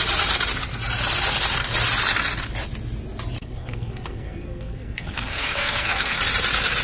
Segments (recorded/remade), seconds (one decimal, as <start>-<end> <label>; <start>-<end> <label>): 0.0-3.4 recorded; 3.4-6.2 remade; 6.2-6.8 recorded